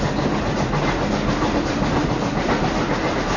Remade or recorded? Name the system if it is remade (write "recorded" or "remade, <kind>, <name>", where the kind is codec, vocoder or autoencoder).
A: recorded